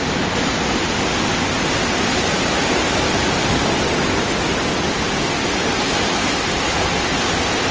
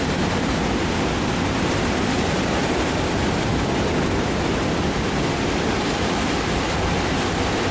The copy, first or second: second